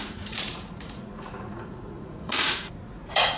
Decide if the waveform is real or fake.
fake